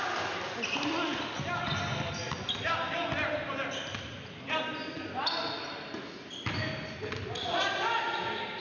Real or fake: real